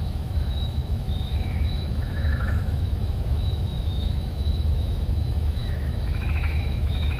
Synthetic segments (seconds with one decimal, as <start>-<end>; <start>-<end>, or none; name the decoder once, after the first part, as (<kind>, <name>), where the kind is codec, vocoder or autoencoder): 0.0-7.2 (autoencoder, DAC-VAE)